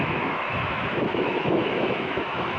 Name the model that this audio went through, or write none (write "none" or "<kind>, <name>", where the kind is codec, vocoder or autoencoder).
autoencoder, DAC-VAE